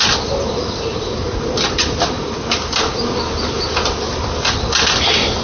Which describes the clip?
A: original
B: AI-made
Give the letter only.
A